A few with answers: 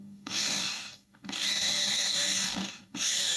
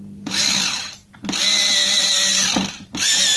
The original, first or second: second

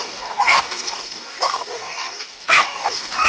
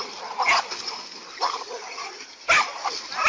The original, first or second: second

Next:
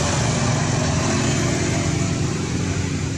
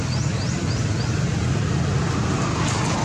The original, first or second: second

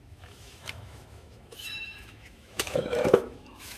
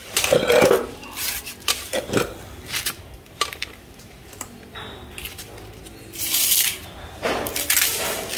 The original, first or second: second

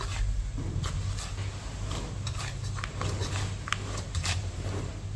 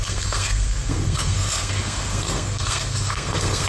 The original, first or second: first